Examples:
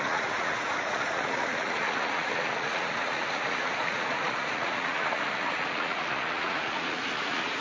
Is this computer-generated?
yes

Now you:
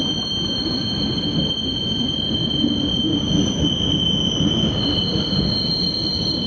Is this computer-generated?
no